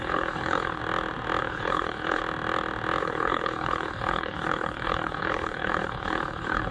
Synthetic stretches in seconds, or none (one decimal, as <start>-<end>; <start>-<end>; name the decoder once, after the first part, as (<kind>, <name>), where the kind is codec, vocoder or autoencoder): 0.0-0.8 (codec, HILCodec); 1.4-2.2; 3.0-6.7